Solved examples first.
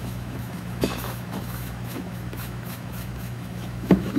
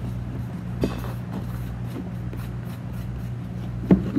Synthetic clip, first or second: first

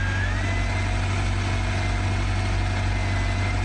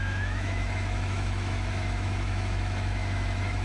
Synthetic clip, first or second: second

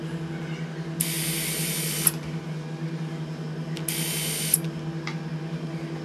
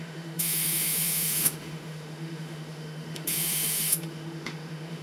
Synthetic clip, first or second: second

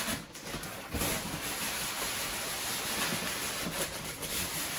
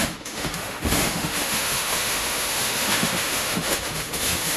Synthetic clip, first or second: second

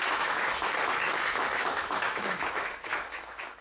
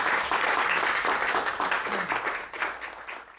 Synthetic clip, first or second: first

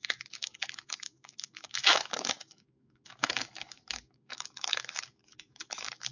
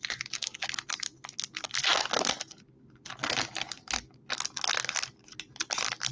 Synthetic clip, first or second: first